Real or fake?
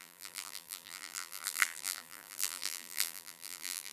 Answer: fake